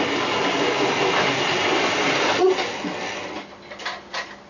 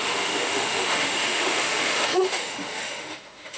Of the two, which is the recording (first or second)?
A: first